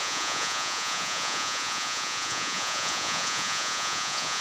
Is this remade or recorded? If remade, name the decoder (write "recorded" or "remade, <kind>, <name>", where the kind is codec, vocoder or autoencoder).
remade, vocoder, Vocos